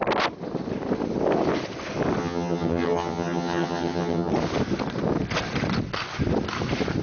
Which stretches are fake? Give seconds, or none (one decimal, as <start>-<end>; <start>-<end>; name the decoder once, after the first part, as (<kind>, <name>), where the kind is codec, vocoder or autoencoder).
2.2-4.3 (vocoder, HiFi-GAN)